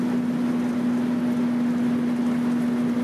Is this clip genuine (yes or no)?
yes